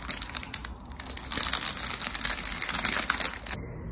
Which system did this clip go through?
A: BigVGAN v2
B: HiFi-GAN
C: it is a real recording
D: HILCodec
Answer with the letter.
C